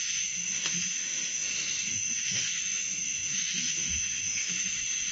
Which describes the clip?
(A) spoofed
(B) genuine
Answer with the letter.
A